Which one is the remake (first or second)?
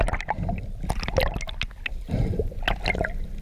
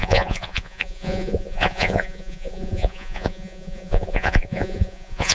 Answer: second